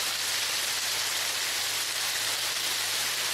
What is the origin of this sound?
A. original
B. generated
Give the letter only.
A